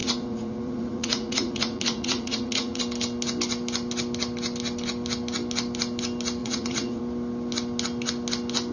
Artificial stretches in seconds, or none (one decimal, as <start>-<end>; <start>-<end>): 0.0-2.8; 6.4-7.0